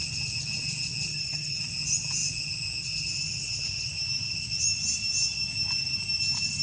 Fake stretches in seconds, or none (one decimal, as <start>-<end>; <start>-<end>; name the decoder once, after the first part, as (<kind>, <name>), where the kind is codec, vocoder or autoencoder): 1.1-1.6 (vocoder, HiFi-GAN)